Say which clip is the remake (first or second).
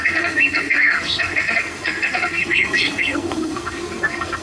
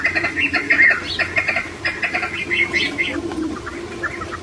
first